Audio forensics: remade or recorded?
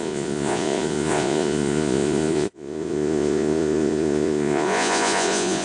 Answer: remade